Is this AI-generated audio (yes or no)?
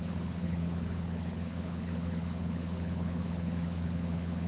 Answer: yes